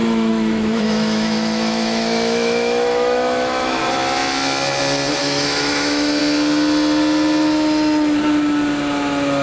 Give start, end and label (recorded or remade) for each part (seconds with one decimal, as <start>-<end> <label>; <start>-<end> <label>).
0.0-3.8 remade; 3.8-5.2 recorded; 5.2-6.2 remade; 6.2-9.4 recorded